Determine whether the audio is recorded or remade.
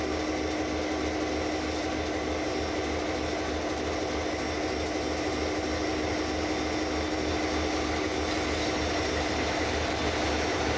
recorded